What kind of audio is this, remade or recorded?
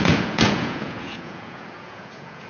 remade